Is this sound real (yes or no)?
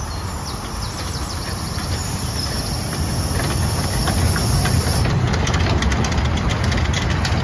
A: yes